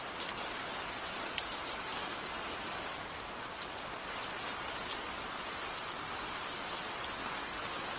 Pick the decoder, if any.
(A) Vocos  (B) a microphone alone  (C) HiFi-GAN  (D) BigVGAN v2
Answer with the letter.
B